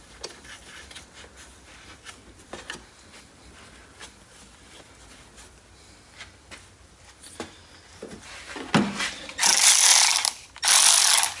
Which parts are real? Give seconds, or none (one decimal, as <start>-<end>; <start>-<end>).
0.0-9.9; 10.5-11.4